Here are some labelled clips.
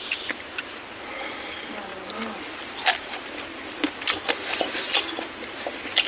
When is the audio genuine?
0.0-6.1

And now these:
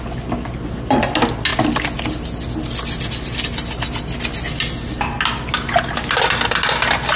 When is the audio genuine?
0.0-7.2